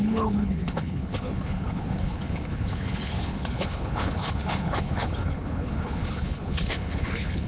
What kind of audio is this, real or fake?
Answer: fake